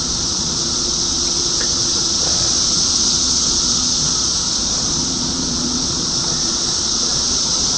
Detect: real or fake fake